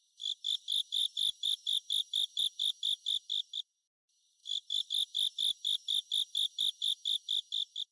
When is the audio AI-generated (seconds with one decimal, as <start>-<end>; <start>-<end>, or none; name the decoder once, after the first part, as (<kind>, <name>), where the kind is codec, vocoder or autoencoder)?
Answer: 1.0-2.4 (vocoder, BigVGAN v2); 4.4-4.9